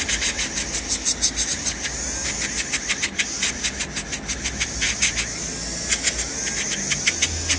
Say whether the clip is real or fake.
real